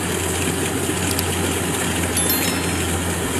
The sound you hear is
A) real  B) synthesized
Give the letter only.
A